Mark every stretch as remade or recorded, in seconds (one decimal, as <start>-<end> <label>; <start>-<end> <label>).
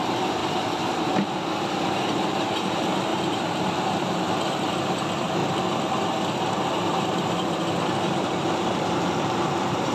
0.0-0.4 remade; 0.4-1.6 recorded; 1.6-5.4 remade; 5.4-6.7 recorded; 6.7-9.9 remade